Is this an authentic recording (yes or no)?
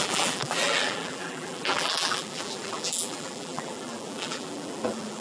no